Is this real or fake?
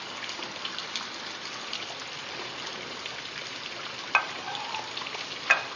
real